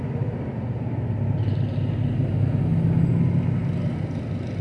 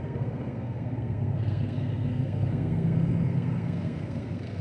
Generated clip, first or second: second